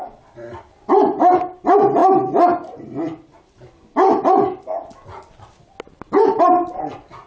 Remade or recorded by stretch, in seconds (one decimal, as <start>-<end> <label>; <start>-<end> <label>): 0.0-7.3 recorded